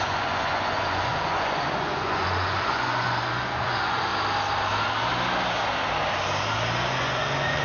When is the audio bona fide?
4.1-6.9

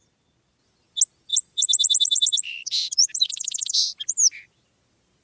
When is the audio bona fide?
0.0-1.3; 4.4-5.2